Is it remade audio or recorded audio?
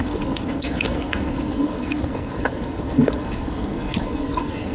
remade